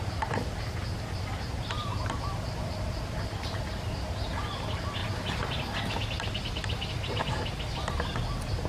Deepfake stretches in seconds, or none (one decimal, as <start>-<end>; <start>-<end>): none